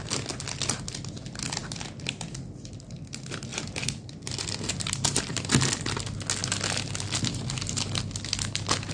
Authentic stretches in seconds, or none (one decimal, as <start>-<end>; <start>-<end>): 0.0-3.5; 5.2-8.9

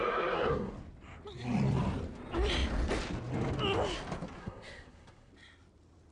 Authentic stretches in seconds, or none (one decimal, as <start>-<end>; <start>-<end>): 0.7-4.4; 5.3-6.1

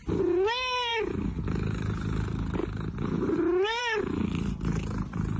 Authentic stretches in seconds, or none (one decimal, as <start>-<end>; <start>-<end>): 0.0-5.4

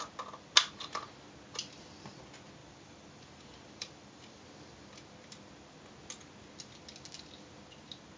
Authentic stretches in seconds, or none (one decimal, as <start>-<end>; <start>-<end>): 0.0-2.6; 4.4-8.2

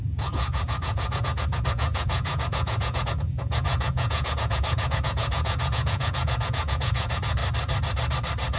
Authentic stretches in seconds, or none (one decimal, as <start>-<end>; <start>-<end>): 7.4-8.6

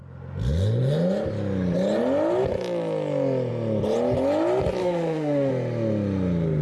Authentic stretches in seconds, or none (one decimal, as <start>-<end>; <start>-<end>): 0.0-4.8; 5.5-6.6

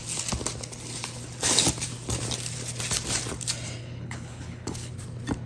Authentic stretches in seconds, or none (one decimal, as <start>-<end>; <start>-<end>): 0.0-3.8; 4.9-5.5

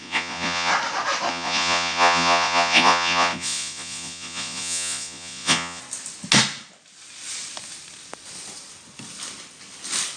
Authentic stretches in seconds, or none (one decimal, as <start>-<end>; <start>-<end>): 0.7-1.3; 5.8-10.2